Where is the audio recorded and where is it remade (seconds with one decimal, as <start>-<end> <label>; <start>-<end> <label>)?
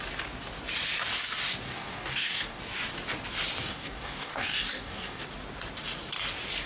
0.0-1.7 recorded; 1.7-2.6 remade; 2.6-3.6 recorded; 3.6-5.2 remade; 5.2-6.7 recorded